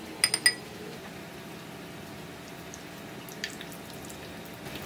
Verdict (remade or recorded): recorded